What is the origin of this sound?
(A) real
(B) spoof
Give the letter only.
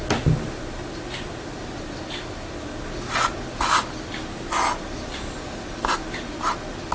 A